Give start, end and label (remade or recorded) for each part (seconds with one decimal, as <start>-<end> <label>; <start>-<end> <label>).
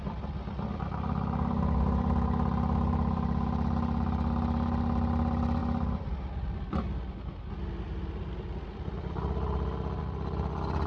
0.0-10.9 recorded